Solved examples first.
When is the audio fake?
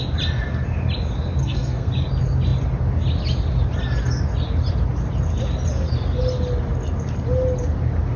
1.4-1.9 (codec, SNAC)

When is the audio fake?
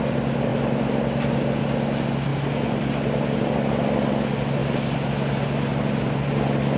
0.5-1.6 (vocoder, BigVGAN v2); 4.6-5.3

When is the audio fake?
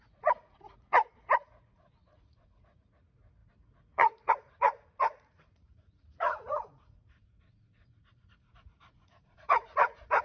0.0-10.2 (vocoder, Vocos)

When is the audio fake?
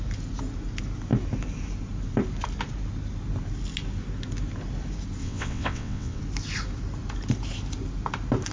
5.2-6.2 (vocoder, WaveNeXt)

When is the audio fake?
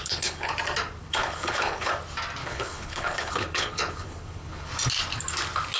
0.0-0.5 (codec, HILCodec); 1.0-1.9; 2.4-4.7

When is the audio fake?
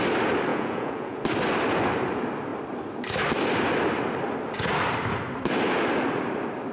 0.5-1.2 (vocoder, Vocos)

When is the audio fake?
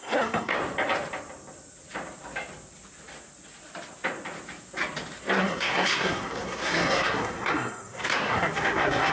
0.0-0.5 (codec, SNAC); 5.4-9.1